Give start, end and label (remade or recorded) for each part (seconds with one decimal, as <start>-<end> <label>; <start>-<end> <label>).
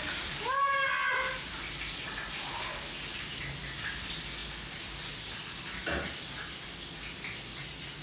0.0-0.5 remade; 0.5-2.7 recorded; 2.7-3.4 remade; 3.4-8.0 recorded